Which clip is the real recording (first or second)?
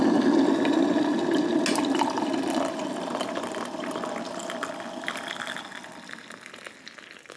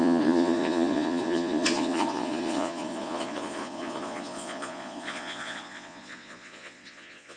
first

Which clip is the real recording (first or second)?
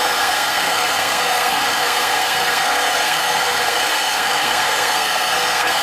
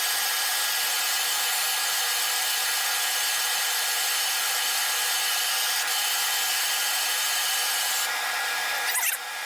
second